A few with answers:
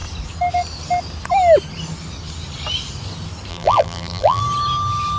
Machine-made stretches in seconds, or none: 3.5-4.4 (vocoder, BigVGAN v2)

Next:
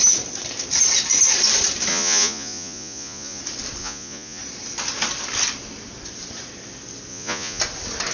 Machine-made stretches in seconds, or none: 1.9-3.4 (vocoder, Vocos); 3.8-4.4; 7.1-7.6

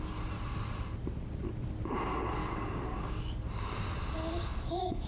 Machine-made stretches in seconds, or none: 2.4-3.2 (codec, DAC); 4.5-5.1

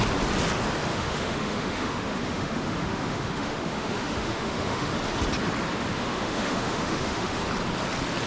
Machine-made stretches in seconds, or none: 0.9-4.9 (autoencoder, DAC-VAE); 5.9-7.4

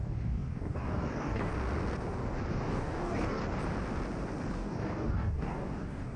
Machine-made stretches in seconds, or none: 0.0-1.5 (codec, DAC); 2.5-3.4; 4.5-6.2